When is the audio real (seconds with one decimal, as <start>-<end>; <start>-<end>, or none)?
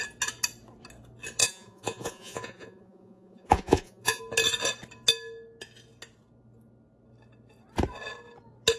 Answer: 0.0-1.4; 4.2-8.8